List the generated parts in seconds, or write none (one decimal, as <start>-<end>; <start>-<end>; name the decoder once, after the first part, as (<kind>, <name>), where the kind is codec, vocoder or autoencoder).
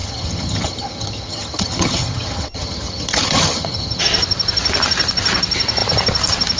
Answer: 0.0-4.0 (vocoder, HiFi-GAN)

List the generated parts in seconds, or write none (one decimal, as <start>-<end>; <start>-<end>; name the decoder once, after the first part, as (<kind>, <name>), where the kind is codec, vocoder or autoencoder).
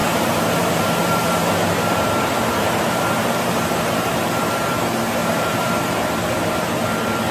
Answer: 0.0-4.4 (vocoder, BigVGAN v2); 5.2-5.9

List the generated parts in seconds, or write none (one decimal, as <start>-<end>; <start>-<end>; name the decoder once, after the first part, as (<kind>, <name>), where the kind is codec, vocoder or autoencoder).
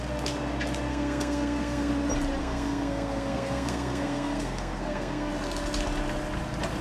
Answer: 0.9-1.9 (codec, SNAC); 2.4-5.3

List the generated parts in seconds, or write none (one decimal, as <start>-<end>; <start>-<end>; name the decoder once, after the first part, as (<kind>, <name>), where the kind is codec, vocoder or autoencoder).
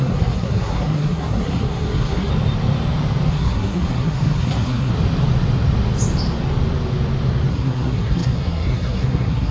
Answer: 0.0-2.3 (codec, SNAC); 3.3-4.9; 7.5-9.5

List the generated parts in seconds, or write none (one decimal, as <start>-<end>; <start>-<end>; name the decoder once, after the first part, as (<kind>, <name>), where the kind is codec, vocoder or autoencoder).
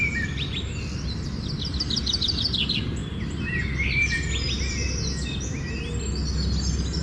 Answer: 0.0-4.8 (vocoder, BigVGAN v2)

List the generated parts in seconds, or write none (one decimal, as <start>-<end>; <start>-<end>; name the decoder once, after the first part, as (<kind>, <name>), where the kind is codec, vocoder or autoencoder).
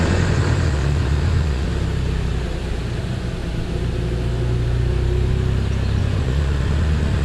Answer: 0.0-1.7 (vocoder, Vocos); 3.0-3.4; 6.0-7.2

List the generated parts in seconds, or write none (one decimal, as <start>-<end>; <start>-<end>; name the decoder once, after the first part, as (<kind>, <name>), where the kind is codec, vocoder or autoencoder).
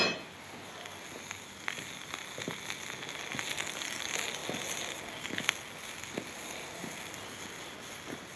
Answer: none